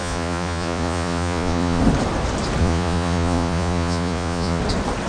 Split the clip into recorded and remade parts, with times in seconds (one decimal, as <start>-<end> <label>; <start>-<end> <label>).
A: 0.0-1.8 remade; 1.8-2.6 recorded; 2.6-4.6 remade; 4.6-5.1 recorded